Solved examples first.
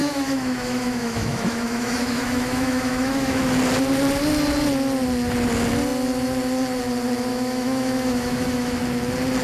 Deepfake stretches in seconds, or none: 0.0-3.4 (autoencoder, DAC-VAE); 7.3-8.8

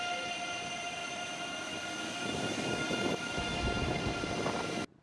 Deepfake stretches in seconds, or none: 1.0-4.0 (autoencoder, DAC-VAE)

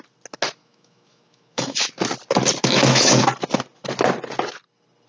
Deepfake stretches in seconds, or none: 0.6-1.9 (autoencoder, DAC-VAE); 2.6-3.2

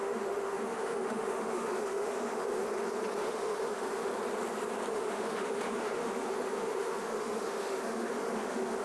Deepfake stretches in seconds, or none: 0.0-2.6 (autoencoder, DAC-VAE); 3.2-4.1; 4.9-8.8